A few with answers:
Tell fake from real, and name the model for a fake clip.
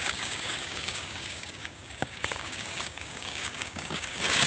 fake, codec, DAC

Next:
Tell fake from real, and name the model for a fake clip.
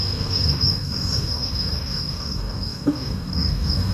fake, codec, DAC